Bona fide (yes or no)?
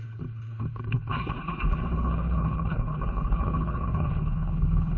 no